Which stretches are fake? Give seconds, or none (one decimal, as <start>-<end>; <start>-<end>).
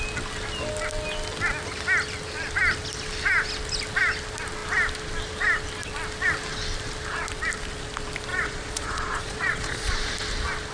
8.3-9.9